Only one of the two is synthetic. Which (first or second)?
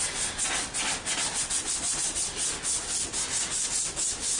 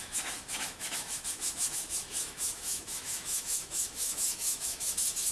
second